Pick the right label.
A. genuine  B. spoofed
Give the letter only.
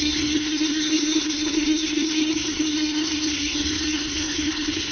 B